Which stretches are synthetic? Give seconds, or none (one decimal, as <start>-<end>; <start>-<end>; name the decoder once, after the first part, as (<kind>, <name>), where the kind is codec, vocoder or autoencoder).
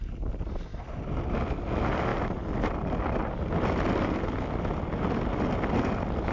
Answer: none